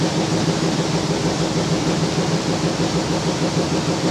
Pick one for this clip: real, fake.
real